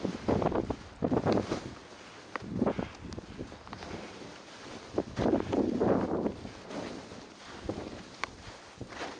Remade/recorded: recorded